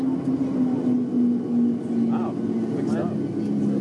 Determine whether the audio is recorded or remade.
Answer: recorded